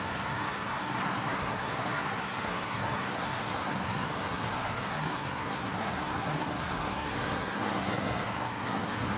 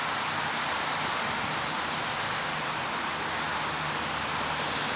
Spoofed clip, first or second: first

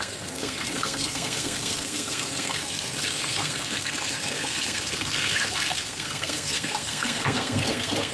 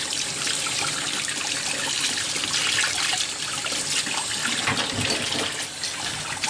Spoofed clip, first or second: first